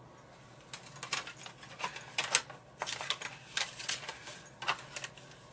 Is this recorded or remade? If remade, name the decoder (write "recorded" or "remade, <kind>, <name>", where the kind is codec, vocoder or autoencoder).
recorded